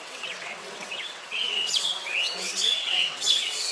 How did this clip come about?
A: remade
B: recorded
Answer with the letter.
A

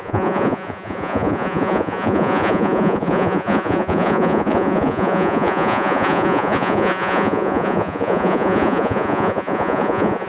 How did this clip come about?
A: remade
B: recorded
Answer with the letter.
A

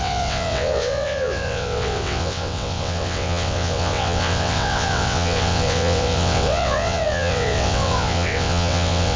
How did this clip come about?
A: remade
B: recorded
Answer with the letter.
A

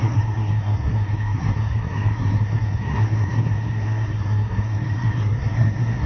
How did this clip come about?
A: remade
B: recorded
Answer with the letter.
A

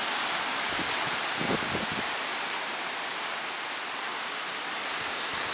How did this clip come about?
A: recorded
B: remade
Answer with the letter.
B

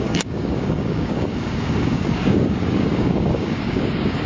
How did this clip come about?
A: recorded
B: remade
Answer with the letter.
B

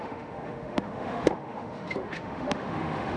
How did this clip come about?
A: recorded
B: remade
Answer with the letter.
B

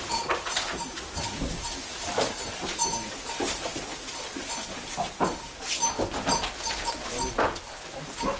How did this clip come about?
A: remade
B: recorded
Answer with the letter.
B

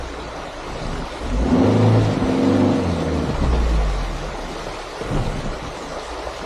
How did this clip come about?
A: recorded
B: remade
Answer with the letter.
A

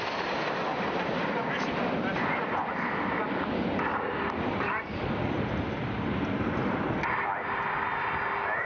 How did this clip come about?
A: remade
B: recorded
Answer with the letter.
A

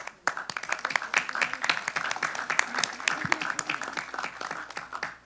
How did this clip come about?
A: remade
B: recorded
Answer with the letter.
B